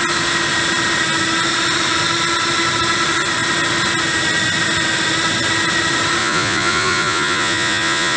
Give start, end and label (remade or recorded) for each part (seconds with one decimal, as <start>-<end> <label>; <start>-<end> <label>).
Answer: 0.0-6.2 recorded; 6.2-8.2 remade